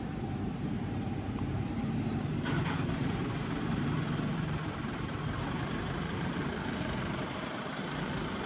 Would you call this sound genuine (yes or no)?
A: no